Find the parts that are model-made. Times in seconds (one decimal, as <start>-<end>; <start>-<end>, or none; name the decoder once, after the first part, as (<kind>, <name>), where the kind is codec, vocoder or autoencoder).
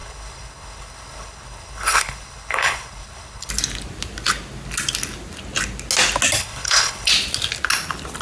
0.0-3.5 (codec, HILCodec); 6.4-7.1